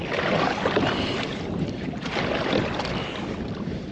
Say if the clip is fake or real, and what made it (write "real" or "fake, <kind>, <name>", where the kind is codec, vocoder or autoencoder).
real